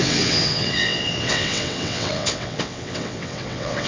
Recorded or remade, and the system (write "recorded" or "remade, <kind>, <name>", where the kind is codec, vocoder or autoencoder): remade, vocoder, WaveNeXt